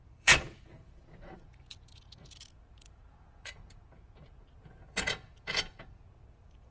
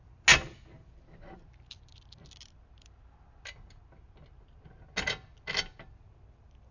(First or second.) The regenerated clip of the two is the first